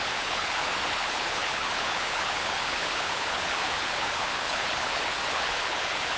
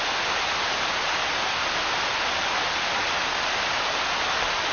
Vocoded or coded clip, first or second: first